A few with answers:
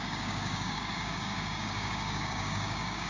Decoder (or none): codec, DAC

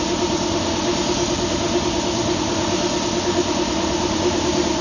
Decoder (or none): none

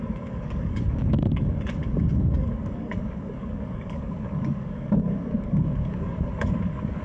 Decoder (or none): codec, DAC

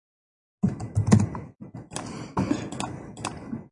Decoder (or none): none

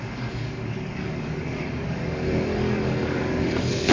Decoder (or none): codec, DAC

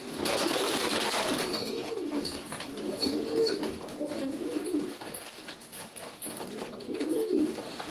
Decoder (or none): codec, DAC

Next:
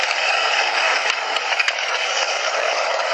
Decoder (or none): codec, DAC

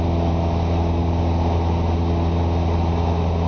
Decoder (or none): none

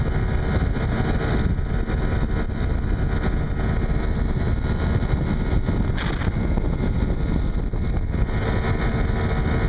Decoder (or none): none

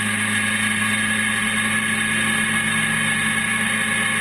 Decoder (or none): none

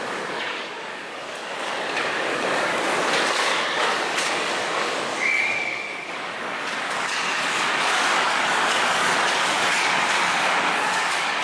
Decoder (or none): codec, DAC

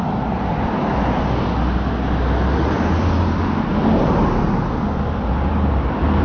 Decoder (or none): none